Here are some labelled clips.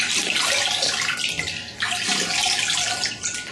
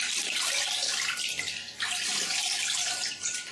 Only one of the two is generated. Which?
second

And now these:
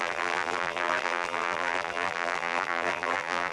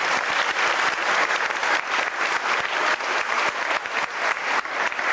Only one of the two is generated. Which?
first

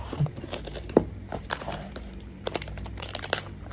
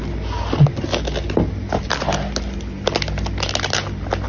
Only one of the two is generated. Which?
first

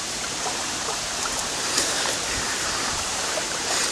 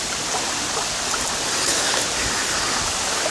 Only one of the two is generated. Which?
first